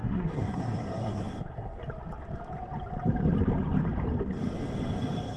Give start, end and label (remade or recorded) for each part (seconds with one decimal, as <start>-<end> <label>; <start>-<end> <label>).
0.0-1.8 remade; 1.8-5.4 recorded